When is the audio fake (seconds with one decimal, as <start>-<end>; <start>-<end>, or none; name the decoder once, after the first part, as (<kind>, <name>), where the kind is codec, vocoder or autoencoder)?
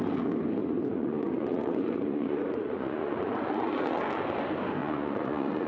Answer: 0.6-4.0 (vocoder, Vocos); 4.8-5.7